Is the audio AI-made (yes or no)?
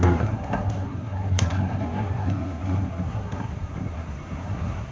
yes